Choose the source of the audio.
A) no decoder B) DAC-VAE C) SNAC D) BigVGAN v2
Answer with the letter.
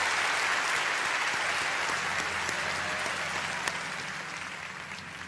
A